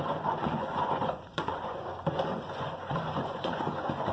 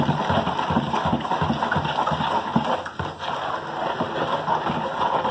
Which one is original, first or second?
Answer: second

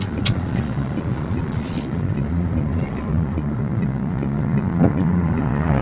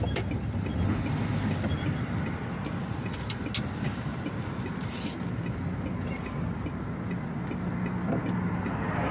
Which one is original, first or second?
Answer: second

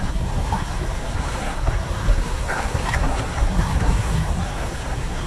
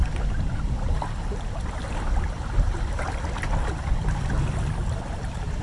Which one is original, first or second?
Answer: second